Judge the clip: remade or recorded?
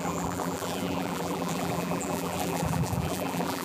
remade